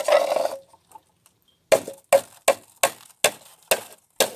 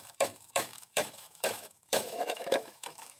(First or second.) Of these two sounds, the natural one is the first